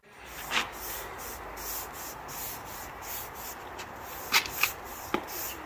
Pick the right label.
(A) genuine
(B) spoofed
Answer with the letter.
A